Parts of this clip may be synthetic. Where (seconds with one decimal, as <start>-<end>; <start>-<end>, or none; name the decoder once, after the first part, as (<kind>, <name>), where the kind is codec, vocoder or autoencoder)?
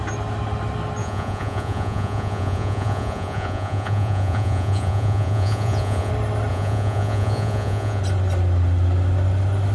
1.0-6.1 (vocoder, Vocos); 6.5-8.0